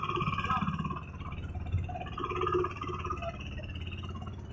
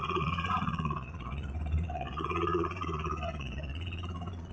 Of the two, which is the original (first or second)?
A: first